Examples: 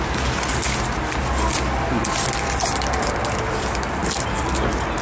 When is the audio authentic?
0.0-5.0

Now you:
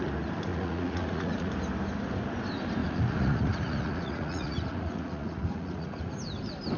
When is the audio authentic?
0.0-0.5; 1.5-2.8; 6.2-6.8

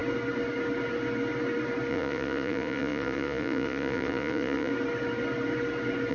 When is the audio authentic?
0.0-1.9; 4.7-6.1

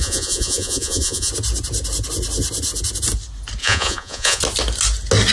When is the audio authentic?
1.3-3.6; 4.4-5.3